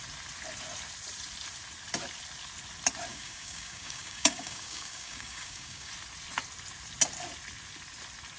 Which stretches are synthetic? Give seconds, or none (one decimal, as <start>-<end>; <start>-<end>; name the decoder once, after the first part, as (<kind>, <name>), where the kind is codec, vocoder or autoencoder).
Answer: 3.1-5.9 (codec, DAC)